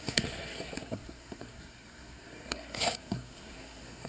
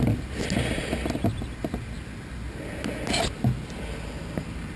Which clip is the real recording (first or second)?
second